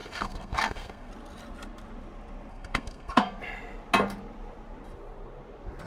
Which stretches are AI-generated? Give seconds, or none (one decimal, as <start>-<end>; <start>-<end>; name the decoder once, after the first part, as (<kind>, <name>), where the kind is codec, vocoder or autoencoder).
0.0-1.1 (codec, SNAC); 2.5-3.4